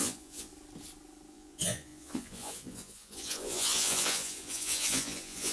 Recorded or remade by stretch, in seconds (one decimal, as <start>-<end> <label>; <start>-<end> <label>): 0.0-0.5 remade; 0.5-1.3 recorded; 1.3-5.5 remade